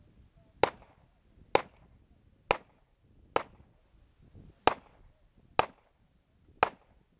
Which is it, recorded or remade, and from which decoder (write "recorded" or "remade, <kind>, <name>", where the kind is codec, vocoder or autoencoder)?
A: recorded